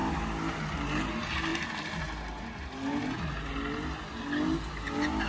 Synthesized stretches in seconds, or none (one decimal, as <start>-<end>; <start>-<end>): none